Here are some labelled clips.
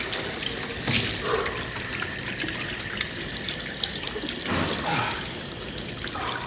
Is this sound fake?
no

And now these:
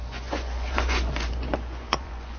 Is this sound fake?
yes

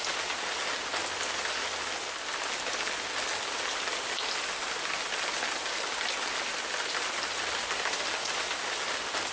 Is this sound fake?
no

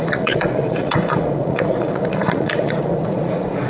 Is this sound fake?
yes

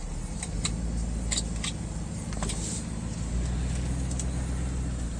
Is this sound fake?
no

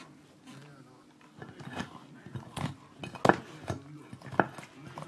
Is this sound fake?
no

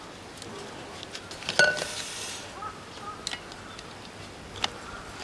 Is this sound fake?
no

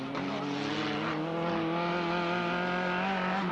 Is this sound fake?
no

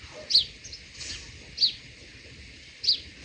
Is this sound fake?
no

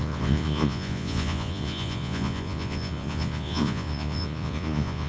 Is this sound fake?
yes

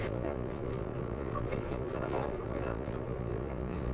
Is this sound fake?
yes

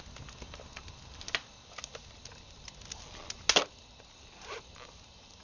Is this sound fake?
no